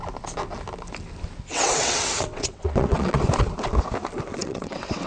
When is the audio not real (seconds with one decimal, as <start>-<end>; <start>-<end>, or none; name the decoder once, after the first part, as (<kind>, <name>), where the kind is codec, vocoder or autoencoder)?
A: 1.5-3.2 (vocoder, WaveNeXt); 4.4-5.1